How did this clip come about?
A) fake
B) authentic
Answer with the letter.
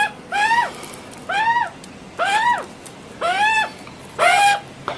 B